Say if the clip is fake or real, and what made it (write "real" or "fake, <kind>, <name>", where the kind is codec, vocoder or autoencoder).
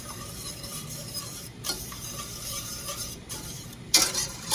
fake, vocoder, BigVGAN v2